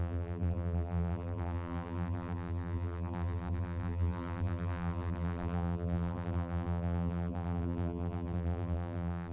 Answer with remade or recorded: remade